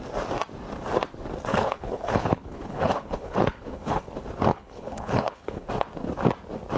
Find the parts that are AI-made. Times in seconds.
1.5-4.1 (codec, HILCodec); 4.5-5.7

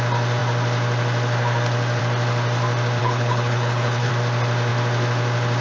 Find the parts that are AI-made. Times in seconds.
3.0-4.1 (codec, HILCodec)

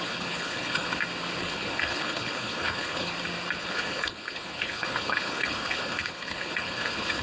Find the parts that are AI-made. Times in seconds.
0.0-0.9 (codec, HILCodec); 1.4-3.1; 3.6-7.2

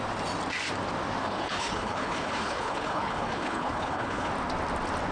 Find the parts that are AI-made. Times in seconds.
1.2-4.3 (codec, HILCodec)

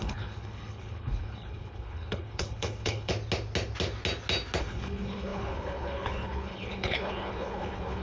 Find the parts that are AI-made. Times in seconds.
0.0-3.1 (codec, HILCodec); 4.6-8.0

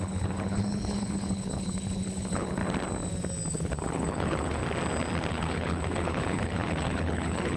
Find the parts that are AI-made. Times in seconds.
0.0-2.6 (codec, HILCodec); 3.5-4.6; 5.3-7.6

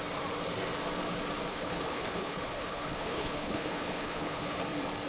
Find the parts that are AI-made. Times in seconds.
1.5-4.6 (codec, HILCodec)

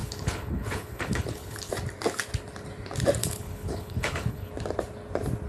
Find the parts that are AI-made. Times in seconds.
0.0-1.7 (codec, HILCodec); 3.2-4.5